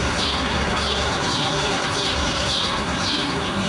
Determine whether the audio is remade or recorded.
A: remade